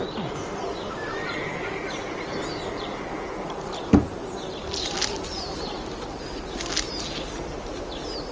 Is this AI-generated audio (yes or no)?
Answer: no